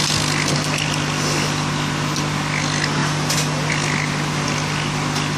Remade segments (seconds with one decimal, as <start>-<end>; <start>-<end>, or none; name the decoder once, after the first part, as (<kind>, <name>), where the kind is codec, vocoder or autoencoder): none